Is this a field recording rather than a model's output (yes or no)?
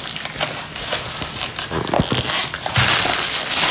yes